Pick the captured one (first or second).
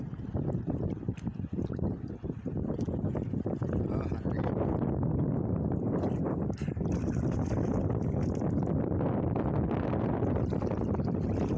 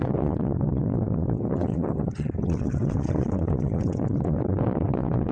first